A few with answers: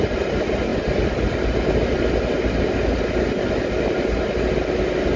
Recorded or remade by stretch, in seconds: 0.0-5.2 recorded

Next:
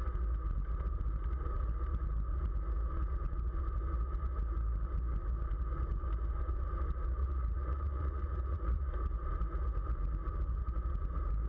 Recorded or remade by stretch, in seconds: 0.0-7.2 recorded; 7.2-8.9 remade; 8.9-11.5 recorded